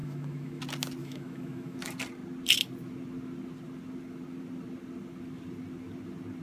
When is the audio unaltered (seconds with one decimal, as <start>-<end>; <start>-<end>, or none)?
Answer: 0.6-1.0; 1.8-6.4